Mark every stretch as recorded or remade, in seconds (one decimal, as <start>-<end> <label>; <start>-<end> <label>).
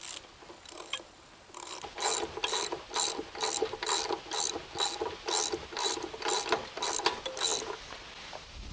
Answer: 0.0-8.7 recorded